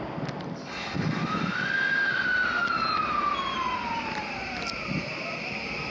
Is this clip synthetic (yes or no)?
no